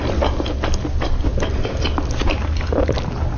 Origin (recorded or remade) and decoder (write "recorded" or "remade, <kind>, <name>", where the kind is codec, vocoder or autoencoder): recorded